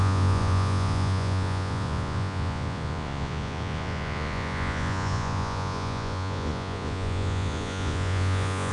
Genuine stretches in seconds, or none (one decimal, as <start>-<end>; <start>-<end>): none